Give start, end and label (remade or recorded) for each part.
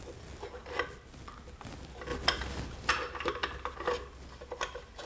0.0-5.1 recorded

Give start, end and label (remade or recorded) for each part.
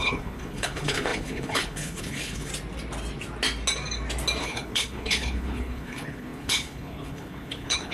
0.0-2.5 remade; 2.5-4.4 recorded; 4.4-7.9 remade